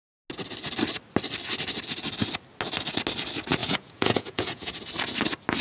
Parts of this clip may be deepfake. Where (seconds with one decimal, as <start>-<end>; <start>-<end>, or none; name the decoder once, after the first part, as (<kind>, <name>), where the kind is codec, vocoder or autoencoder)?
3.6-4.7 (vocoder, Vocos)